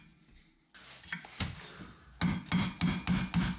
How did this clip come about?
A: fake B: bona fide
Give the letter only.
B